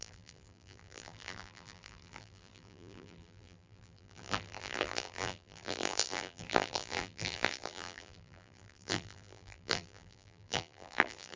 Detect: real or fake fake